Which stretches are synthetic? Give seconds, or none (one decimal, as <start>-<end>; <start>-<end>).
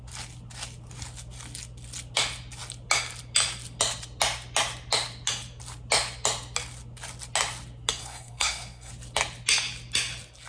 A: 8.0-8.9